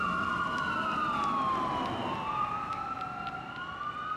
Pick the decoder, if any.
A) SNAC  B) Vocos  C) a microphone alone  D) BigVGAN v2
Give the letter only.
C